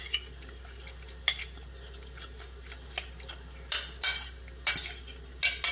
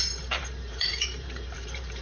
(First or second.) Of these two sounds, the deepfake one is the second